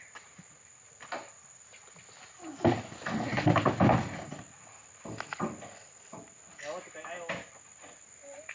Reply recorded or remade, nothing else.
recorded